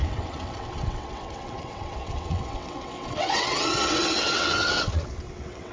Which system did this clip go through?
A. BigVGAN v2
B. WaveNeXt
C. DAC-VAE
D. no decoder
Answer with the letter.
B